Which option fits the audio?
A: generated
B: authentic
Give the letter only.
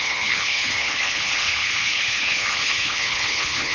A